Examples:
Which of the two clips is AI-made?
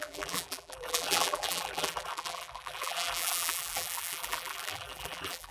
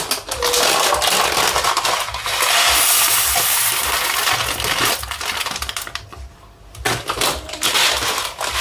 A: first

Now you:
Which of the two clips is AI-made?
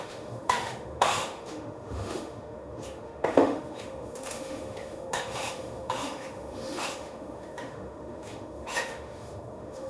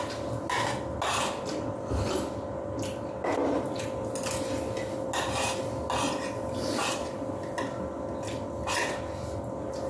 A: first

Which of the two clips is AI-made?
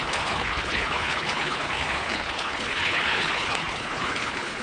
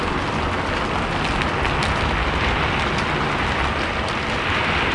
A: first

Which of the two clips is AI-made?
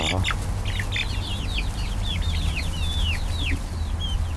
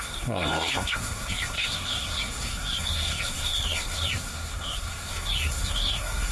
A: second